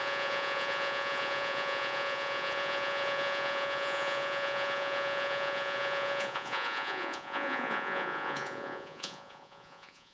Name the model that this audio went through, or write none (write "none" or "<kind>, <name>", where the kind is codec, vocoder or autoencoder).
vocoder, Vocos